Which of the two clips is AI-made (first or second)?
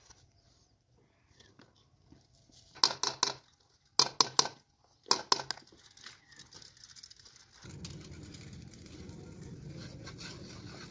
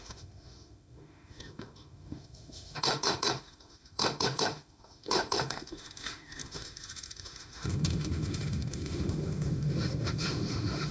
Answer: second